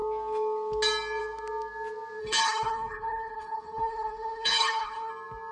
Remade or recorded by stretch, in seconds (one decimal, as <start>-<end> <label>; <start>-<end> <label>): 0.0-2.2 recorded; 2.2-5.1 remade; 5.1-5.5 recorded

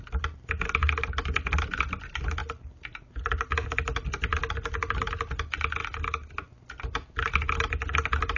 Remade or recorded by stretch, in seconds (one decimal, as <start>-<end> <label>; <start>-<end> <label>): 0.0-8.4 recorded

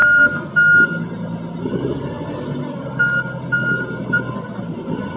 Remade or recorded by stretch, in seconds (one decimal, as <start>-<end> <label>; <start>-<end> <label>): 0.0-0.5 remade; 0.5-5.2 recorded

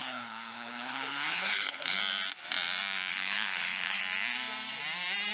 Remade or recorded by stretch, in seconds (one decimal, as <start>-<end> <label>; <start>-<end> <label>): 0.0-2.0 remade; 2.0-3.1 recorded; 3.1-4.0 remade; 4.0-5.3 recorded

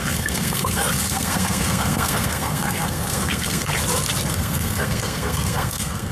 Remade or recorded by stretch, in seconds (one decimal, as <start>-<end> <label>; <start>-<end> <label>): 0.0-3.7 remade; 3.7-4.3 recorded; 4.3-6.1 remade

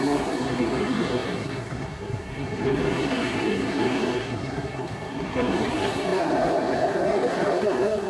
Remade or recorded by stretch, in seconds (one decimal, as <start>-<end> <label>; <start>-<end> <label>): 0.0-8.1 remade

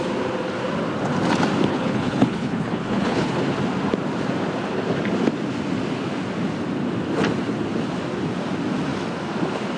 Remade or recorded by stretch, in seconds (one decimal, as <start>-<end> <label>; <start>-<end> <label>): 0.0-1.7 recorded; 1.7-3.4 remade; 3.4-9.8 recorded

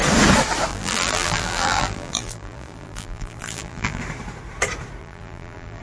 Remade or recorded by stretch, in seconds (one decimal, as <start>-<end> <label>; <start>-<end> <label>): 0.0-0.7 recorded; 0.7-4.0 remade; 4.0-5.0 recorded; 5.0-5.8 remade